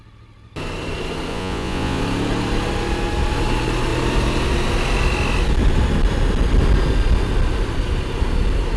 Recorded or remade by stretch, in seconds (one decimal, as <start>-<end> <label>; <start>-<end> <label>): 0.0-1.3 recorded; 1.3-2.0 remade; 2.0-8.8 recorded